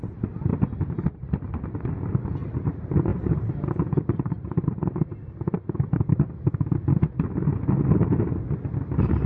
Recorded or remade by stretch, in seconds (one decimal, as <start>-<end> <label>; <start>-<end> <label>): 0.0-9.3 recorded